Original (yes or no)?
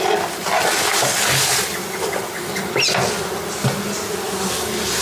yes